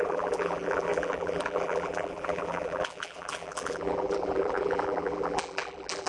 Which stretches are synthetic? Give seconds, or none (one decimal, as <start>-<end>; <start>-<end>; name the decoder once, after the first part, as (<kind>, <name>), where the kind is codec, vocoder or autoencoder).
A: 0.0-6.1 (vocoder, BigVGAN v2)